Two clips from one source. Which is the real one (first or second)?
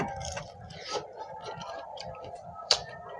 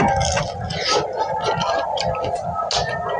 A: second